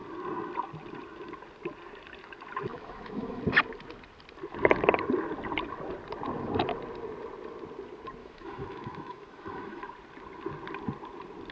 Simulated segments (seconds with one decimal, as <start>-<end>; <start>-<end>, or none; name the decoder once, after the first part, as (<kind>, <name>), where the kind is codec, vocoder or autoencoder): 2.7-3.4 (autoencoder, DAC-VAE); 8.2-9.9